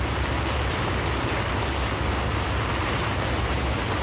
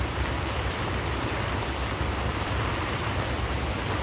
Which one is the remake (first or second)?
second